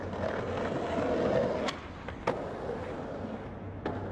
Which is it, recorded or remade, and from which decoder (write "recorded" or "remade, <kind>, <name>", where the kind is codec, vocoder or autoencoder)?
recorded